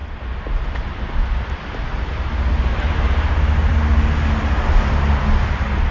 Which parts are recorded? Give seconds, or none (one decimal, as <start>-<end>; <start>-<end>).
0.0-5.9